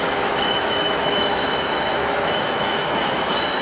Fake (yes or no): yes